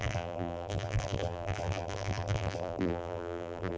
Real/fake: fake